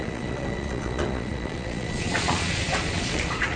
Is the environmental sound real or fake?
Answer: fake